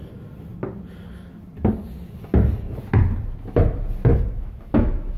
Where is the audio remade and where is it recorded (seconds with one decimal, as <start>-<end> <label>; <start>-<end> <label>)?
0.0-4.1 recorded; 4.1-5.2 remade